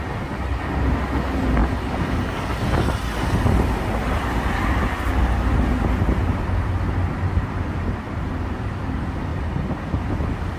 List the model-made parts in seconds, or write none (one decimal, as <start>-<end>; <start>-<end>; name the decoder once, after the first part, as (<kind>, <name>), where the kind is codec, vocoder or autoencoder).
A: none